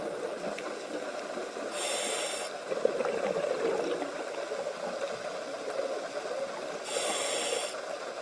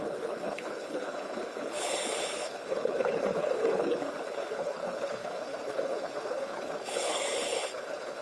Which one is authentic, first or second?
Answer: first